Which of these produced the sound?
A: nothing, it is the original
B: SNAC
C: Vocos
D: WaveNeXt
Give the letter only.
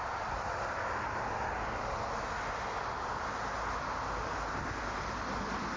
A